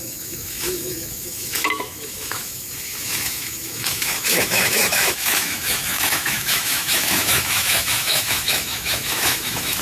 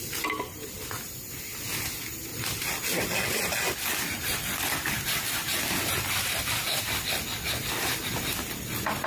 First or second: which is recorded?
second